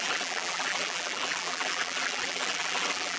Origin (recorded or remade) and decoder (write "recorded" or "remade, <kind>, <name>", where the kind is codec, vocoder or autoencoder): remade, vocoder, BigVGAN v2